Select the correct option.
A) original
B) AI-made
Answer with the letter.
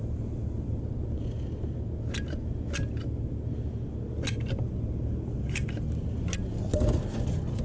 A